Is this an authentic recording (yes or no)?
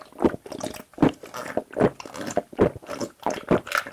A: yes